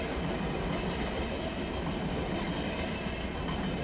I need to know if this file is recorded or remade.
recorded